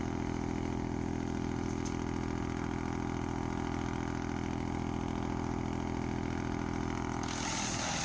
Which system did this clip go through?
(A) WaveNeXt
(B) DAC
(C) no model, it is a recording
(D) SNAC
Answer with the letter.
C